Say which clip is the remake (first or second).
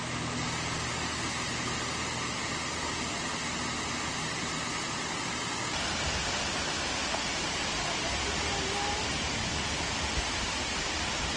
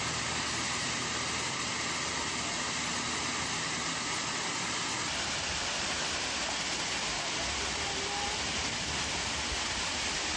second